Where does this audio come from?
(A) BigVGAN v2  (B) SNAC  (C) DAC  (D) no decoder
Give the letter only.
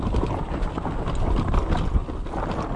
D